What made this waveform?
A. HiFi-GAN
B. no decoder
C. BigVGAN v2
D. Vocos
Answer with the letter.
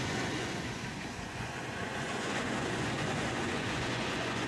D